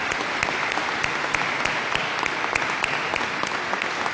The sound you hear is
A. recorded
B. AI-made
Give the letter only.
A